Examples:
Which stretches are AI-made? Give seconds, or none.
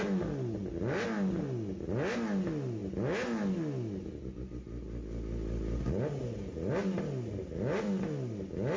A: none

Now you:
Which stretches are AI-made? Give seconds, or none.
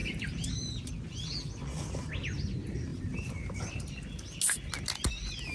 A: 0.0-0.9; 2.9-3.8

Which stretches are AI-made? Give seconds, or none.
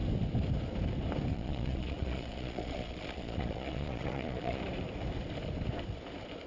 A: 1.3-4.6